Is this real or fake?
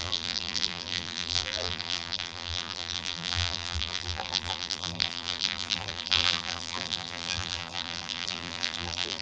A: fake